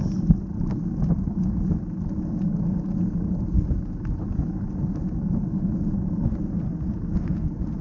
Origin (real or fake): real